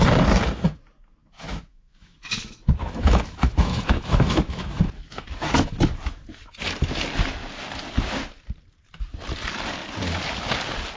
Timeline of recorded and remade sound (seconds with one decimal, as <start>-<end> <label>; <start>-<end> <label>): 0.0-1.2 recorded; 1.2-5.7 remade; 5.7-11.0 recorded